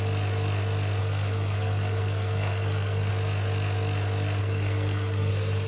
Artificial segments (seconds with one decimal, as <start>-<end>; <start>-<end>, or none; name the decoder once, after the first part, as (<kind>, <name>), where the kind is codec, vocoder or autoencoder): 1.0-3.1 (codec, SNAC); 4.4-5.3